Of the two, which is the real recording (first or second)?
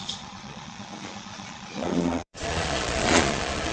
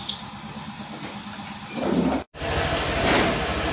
second